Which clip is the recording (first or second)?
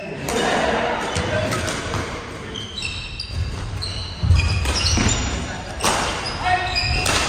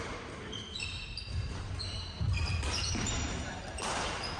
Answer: first